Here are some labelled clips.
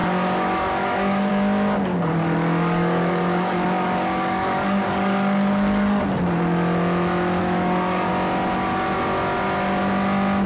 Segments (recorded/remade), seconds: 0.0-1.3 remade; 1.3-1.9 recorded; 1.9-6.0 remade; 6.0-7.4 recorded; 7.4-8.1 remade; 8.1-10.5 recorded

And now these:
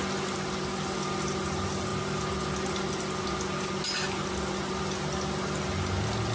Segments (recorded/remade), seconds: 0.0-6.3 recorded

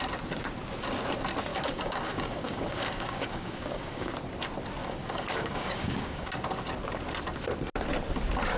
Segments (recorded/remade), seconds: 0.0-1.5 recorded; 1.5-4.1 remade; 4.1-4.8 recorded; 4.8-6.3 remade; 6.3-8.6 recorded

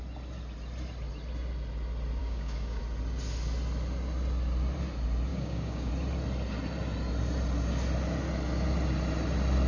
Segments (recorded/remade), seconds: 0.0-2.2 recorded; 2.2-2.8 remade; 2.8-5.3 recorded; 5.3-5.9 remade; 5.9-9.7 recorded

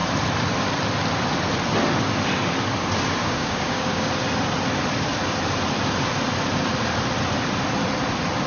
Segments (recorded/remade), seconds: 0.0-3.2 recorded; 3.2-4.1 remade; 4.1-8.5 recorded